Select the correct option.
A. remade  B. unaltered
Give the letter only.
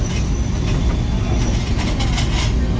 B